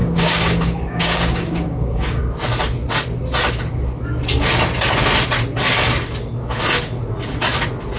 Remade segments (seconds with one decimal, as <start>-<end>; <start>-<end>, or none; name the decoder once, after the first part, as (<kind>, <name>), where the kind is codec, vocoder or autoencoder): 0.0-2.2 (codec, DAC)